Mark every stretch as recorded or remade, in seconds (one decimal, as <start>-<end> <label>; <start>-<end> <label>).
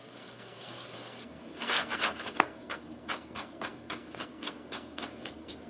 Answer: 0.0-5.7 remade